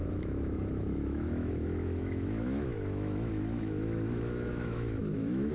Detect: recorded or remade remade